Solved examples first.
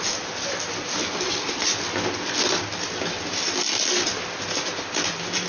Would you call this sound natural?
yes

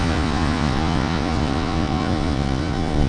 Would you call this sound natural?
no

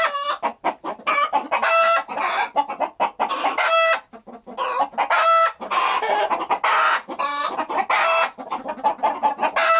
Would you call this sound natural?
yes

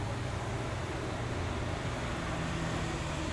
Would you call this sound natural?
yes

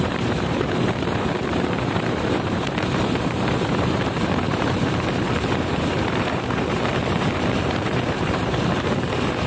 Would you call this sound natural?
no